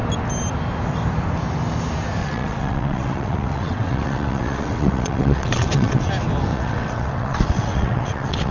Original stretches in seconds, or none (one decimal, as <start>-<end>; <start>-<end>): 0.0-2.2; 6.1-6.5